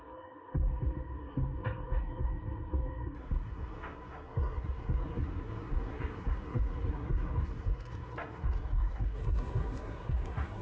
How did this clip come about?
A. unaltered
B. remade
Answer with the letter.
B